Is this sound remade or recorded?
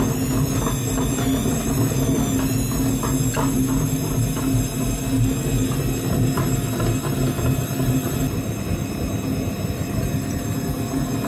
recorded